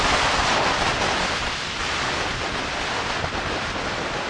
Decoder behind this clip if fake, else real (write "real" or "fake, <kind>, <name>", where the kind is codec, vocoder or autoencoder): real